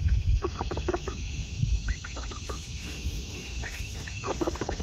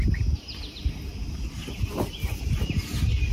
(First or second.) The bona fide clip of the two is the second